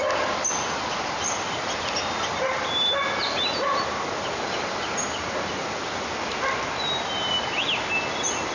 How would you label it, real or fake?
real